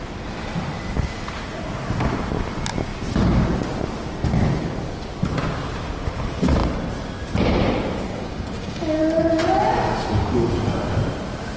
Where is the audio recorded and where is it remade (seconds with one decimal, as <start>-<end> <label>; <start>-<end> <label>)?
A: 0.0-8.1 recorded; 8.1-9.0 remade; 9.0-11.6 recorded